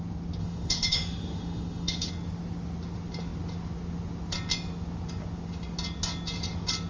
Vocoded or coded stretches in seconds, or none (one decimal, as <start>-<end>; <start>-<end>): 0.4-2.1